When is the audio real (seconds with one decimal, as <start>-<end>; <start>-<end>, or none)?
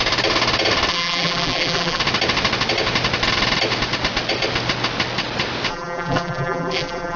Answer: 0.0-0.9; 2.0-5.7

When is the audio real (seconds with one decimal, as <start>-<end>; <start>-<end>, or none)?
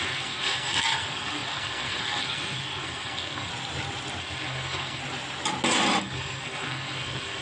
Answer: 3.5-4.2; 5.0-6.0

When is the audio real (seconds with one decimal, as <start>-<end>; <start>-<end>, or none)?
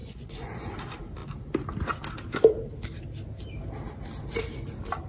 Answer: 0.7-5.1